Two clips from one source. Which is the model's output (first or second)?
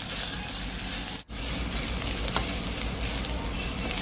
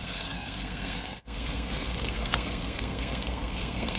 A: second